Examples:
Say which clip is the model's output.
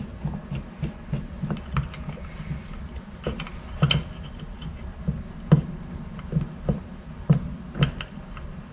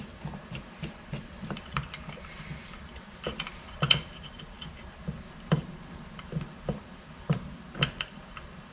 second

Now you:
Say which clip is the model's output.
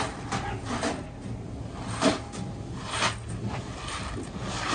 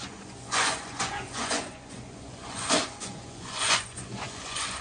second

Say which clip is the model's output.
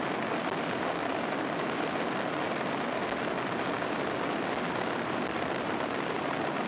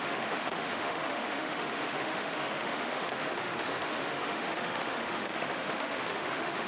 second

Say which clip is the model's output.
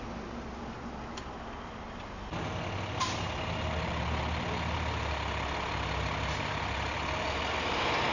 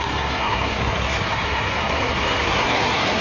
second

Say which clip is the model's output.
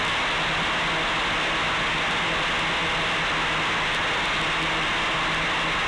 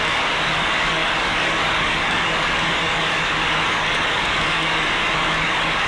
second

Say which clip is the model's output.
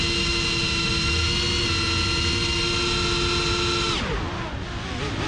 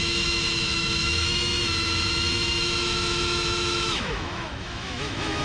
second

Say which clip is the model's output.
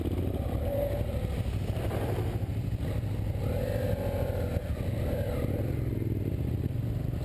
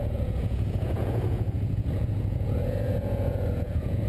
second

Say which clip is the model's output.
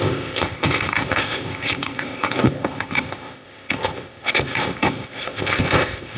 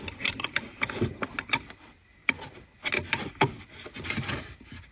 first